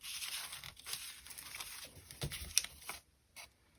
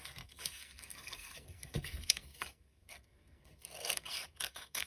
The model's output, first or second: second